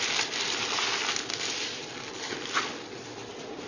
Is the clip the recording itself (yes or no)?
yes